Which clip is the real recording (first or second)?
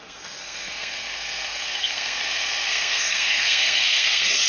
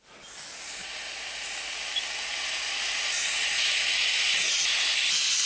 second